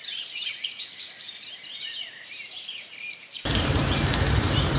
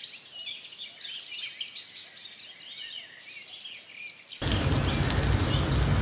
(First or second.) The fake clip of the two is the first